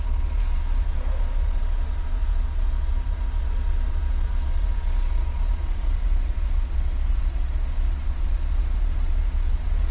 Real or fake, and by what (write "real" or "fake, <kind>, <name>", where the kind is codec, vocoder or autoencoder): fake, vocoder, Vocos